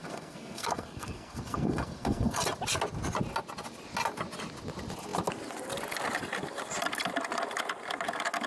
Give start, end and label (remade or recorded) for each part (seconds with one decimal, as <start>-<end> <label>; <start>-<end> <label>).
0.0-2.4 remade; 2.4-8.5 recorded